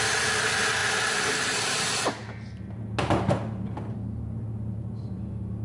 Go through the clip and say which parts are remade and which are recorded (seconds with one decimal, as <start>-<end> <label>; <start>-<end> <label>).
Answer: 0.0-5.6 recorded

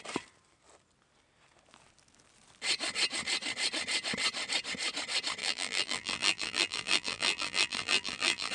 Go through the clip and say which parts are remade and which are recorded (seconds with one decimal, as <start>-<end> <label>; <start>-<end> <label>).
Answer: 0.0-5.4 recorded; 5.4-8.5 remade

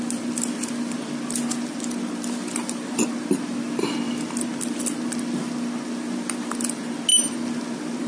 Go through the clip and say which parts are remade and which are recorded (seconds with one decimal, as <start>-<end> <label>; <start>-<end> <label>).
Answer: 0.0-8.1 recorded

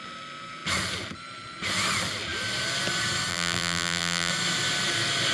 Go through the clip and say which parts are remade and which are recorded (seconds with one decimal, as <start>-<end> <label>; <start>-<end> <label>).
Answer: 0.0-3.3 recorded; 3.3-4.3 remade; 4.3-5.3 recorded

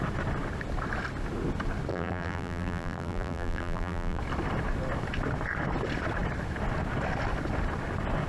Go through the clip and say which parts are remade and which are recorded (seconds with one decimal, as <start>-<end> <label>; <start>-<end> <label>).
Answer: 0.0-1.9 recorded; 1.9-4.2 remade; 4.2-8.3 recorded

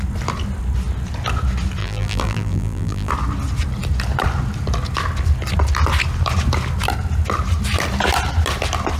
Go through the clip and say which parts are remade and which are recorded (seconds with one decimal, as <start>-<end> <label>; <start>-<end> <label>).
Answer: 0.0-1.8 recorded; 1.8-3.1 remade; 3.1-9.0 recorded

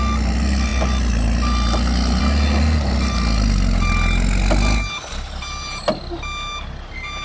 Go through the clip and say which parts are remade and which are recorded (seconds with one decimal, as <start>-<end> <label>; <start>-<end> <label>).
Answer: 0.0-7.2 recorded

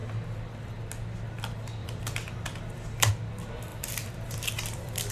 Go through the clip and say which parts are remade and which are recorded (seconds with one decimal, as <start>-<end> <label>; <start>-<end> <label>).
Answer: 0.0-1.8 recorded; 1.8-3.1 remade; 3.1-3.7 recorded; 3.7-5.1 remade